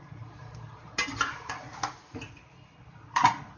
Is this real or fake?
real